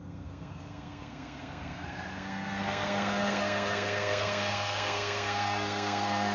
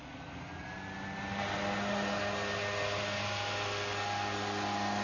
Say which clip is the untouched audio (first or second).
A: second